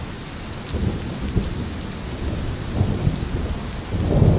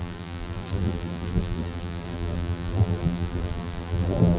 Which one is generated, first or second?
second